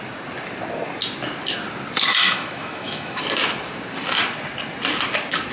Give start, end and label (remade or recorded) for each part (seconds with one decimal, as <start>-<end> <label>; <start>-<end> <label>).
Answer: 0.0-2.1 recorded; 2.1-3.2 remade; 3.2-5.5 recorded